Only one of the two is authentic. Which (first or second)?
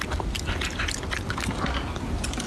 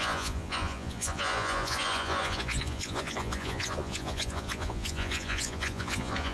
first